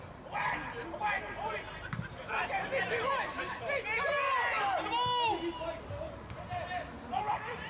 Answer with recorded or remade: recorded